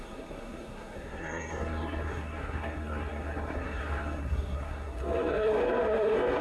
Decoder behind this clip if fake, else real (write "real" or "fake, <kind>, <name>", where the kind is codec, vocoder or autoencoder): fake, codec, SNAC